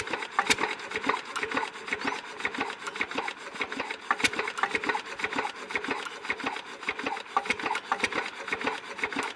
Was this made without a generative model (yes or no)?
yes